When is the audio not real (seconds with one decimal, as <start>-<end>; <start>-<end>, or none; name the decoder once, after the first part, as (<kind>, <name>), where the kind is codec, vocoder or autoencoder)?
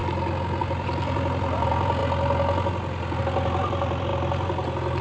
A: 0.6-2.0 (vocoder, BigVGAN v2); 3.2-4.1